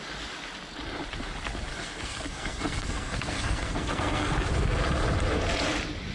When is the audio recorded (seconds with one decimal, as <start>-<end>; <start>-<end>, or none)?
0.0-1.7; 4.5-6.1